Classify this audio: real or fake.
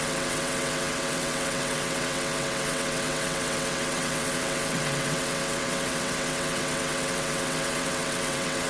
fake